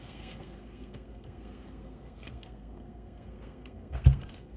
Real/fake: fake